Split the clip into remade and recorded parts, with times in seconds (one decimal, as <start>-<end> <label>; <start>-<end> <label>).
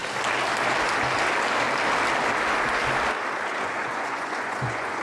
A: 0.0-3.5 recorded; 3.5-5.0 remade